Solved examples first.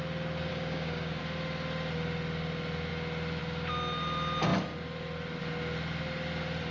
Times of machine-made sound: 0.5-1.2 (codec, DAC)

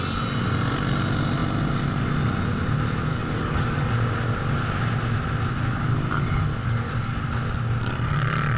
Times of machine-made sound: 3.1-3.9 (codec, DAC); 6.5-7.2